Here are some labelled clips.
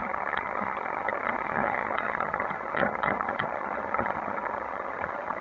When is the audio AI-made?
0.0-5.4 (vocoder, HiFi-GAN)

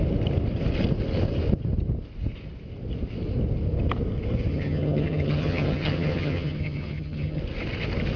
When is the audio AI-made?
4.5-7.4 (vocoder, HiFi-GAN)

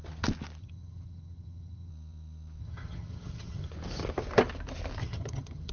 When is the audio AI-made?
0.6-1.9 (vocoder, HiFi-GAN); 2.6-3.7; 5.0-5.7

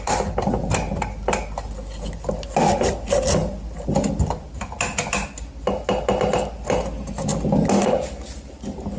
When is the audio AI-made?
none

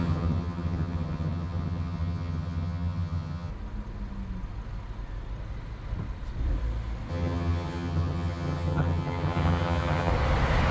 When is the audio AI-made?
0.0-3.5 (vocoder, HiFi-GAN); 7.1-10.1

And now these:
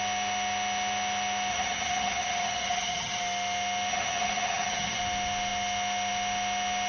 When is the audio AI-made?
1.5-3.2 (vocoder, HiFi-GAN); 3.9-5.0

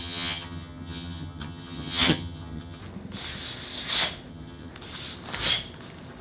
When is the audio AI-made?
0.0-2.8 (vocoder, HiFi-GAN); 4.3-4.7